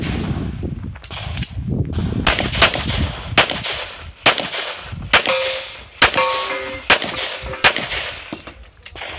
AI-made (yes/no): no